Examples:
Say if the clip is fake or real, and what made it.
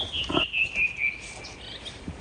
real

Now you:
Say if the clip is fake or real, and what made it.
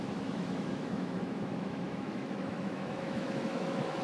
fake, autoencoder, DAC-VAE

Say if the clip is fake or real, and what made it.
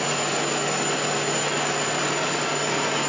real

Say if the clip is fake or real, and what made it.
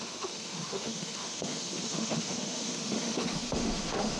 fake, autoencoder, DAC-VAE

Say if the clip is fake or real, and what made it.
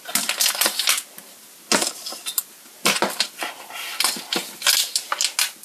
real